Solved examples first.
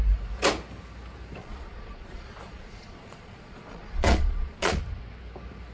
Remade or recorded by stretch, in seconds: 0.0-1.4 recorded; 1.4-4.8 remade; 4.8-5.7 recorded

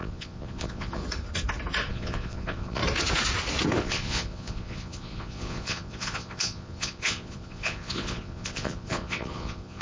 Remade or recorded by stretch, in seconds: 0.0-1.0 remade; 1.0-1.9 recorded; 1.9-2.8 remade; 2.8-3.8 recorded; 3.8-9.8 remade

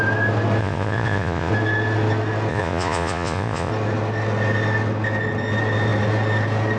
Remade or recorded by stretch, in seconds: 0.0-0.6 recorded; 0.6-1.5 remade; 1.5-2.5 recorded; 2.5-3.7 remade; 3.7-6.8 recorded

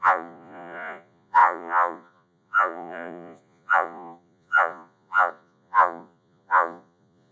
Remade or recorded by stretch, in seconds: 0.0-7.3 remade

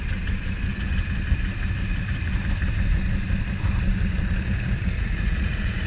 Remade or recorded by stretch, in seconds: 0.0-4.8 recorded; 4.8-5.9 remade

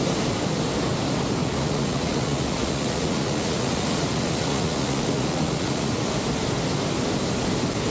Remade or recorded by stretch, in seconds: 0.0-1.4 recorded; 1.4-6.1 remade; 6.1-7.9 recorded

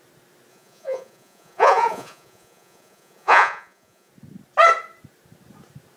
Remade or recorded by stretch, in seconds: 0.0-0.5 recorded; 0.5-4.1 remade; 4.1-6.0 recorded